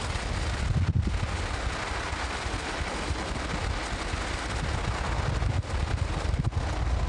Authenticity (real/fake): real